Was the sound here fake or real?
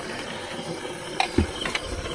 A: real